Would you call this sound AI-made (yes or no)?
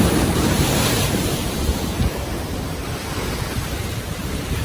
yes